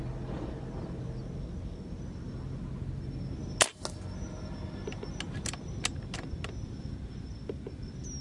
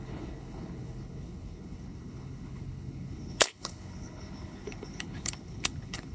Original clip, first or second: first